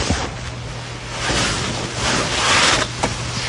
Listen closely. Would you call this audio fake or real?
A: real